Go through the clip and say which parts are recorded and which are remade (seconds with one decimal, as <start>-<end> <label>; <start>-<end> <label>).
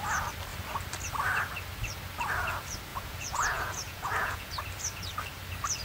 0.0-2.9 recorded; 2.9-4.5 remade; 4.5-5.8 recorded